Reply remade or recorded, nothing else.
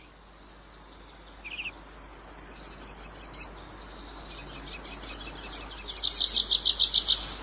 recorded